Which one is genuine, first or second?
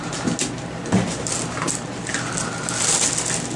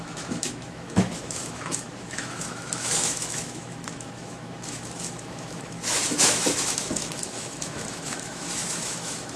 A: first